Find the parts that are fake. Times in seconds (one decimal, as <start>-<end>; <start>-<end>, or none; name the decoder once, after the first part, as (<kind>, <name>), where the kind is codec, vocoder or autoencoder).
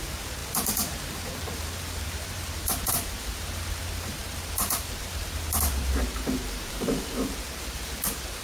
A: 0.0-8.4 (vocoder, BigVGAN v2)